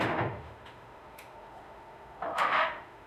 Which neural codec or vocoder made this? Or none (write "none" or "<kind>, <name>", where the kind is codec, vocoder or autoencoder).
autoencoder, DAC-VAE